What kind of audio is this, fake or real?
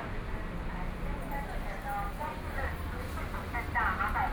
real